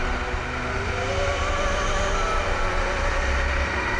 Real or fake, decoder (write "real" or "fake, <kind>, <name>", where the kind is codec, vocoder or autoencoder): real